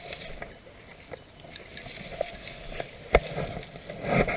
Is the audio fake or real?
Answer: real